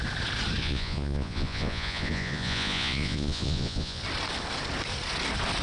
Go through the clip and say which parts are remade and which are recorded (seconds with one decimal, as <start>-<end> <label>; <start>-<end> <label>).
0.0-0.6 recorded; 0.6-4.0 remade; 4.0-5.6 recorded